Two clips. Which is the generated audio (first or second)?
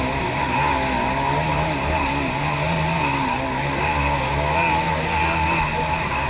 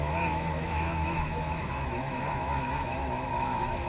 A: second